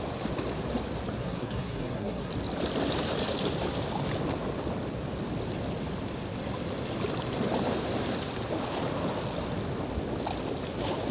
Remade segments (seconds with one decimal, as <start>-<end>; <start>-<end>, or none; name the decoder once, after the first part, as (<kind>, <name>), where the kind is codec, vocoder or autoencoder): 1.2-2.3 (codec, SNAC)